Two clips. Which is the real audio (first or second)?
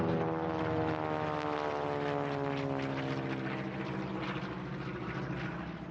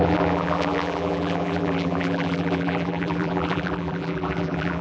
first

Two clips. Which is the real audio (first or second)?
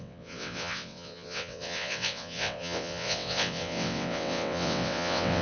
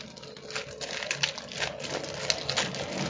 second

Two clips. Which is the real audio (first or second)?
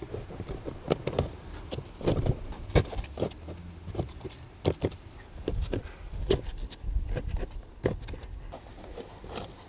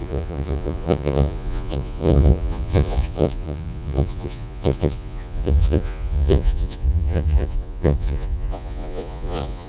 first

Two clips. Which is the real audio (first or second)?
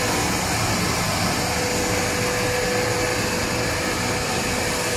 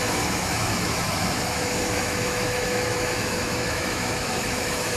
first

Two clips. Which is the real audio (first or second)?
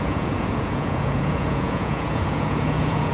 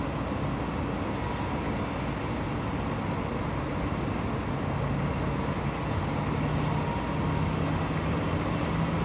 second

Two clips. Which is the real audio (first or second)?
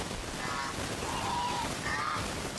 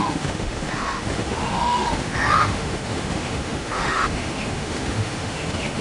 first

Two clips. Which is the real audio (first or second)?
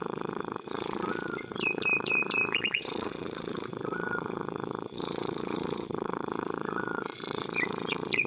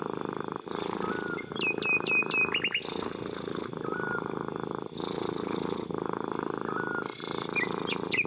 second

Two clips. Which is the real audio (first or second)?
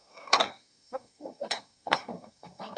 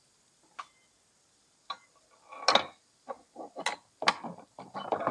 second